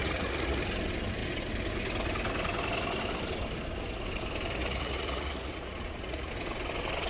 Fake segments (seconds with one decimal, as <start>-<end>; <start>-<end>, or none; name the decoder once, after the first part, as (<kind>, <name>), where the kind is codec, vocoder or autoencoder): 0.0-0.6 (vocoder, Vocos); 4.6-6.3